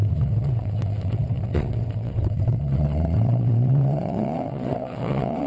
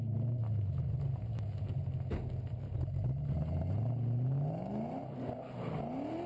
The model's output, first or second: first